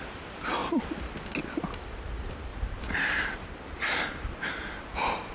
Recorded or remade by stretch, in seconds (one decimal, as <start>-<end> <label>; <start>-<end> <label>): 0.0-2.5 recorded; 2.5-5.3 remade